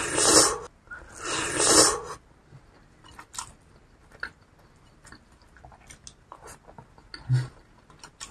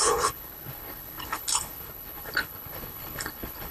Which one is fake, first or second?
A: second